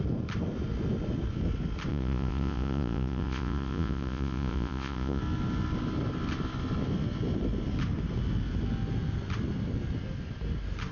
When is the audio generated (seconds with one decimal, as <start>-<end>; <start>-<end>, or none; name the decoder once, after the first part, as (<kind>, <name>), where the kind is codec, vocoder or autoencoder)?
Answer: 1.9-5.2 (vocoder, Vocos)